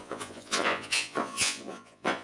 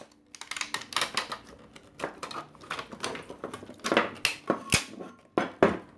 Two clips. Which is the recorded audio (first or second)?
second